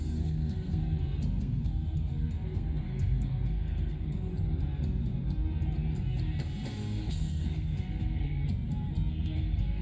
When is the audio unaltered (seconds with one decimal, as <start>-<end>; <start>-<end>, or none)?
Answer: 0.8-1.4; 4.3-7.0; 8.4-9.1